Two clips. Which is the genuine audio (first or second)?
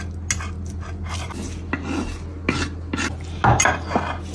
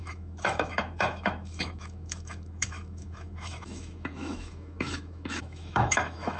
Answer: first